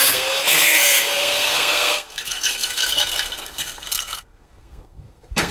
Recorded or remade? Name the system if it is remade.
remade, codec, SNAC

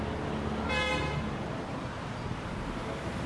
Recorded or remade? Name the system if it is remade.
recorded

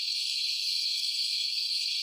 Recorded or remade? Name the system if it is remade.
remade, codec, SNAC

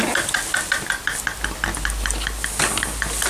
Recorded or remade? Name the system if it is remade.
recorded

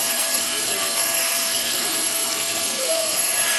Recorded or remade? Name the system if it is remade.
remade, codec, SNAC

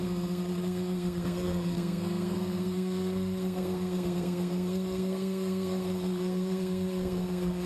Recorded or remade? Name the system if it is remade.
remade, codec, SNAC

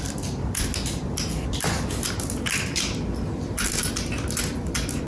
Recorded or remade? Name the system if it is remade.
recorded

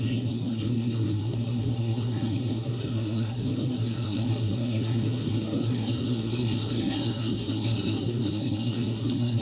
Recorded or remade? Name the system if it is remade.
remade, codec, SNAC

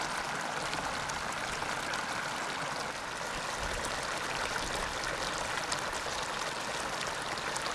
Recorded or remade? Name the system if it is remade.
recorded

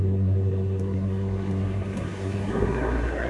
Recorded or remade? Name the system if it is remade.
remade, codec, SNAC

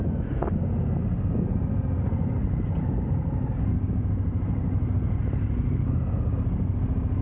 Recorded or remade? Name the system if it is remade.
recorded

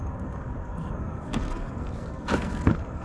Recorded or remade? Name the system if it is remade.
remade, codec, SNAC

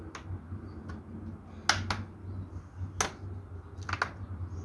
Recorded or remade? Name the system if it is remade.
recorded